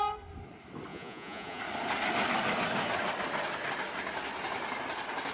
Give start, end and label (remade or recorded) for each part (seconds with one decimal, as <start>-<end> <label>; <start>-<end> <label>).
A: 0.0-0.9 recorded; 0.9-1.6 remade; 1.6-5.3 recorded